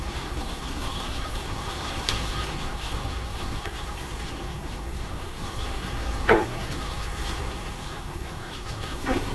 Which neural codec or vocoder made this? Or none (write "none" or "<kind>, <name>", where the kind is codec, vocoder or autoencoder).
codec, SNAC